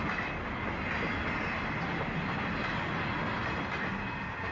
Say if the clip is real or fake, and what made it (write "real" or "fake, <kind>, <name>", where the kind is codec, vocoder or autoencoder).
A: real